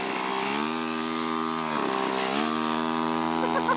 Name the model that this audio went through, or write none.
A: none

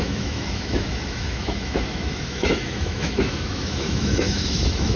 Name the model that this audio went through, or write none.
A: autoencoder, DAC-VAE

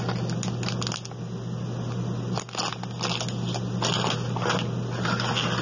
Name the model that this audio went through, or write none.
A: none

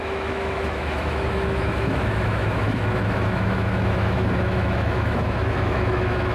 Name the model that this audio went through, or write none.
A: autoencoder, DAC-VAE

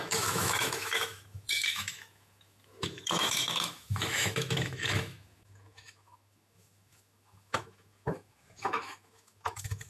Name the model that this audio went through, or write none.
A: autoencoder, DAC-VAE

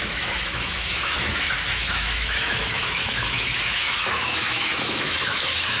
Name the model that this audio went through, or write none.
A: autoencoder, DAC-VAE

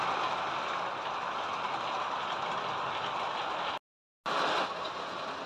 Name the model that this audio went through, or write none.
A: none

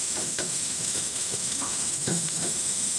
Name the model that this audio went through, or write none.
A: autoencoder, DAC-VAE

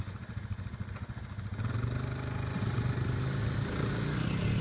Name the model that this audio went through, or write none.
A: none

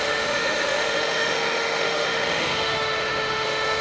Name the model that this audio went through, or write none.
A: autoencoder, DAC-VAE